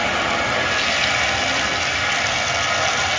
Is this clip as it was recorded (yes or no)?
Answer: yes